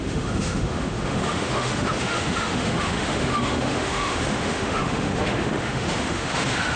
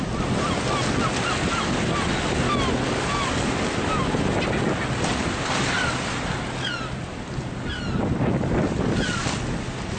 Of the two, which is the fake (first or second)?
first